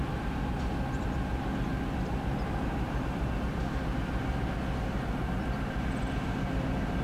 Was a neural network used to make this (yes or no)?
no